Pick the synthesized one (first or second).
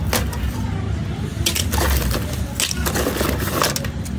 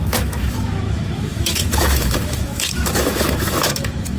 second